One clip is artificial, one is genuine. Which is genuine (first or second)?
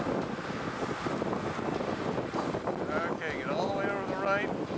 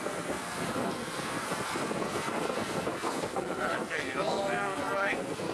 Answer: first